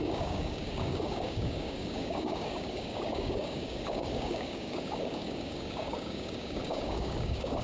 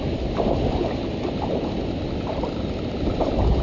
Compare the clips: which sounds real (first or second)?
second